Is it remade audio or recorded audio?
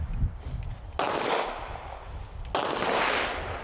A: recorded